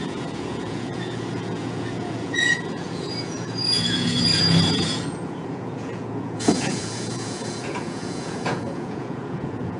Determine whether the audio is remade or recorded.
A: remade